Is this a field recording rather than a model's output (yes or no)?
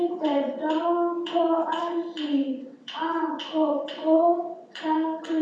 no